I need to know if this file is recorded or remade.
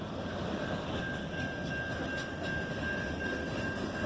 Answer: recorded